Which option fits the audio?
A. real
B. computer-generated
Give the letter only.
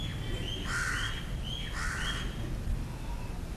A